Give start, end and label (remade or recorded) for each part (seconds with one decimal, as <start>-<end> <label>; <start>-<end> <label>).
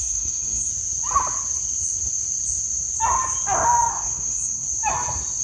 0.0-0.7 remade; 0.7-3.9 recorded; 3.9-4.7 remade; 4.7-5.4 recorded